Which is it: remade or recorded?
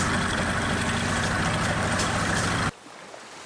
recorded